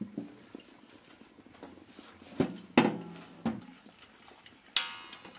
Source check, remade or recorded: recorded